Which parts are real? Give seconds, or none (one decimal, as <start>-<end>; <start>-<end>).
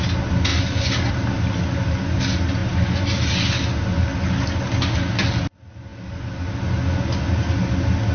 0.0-8.1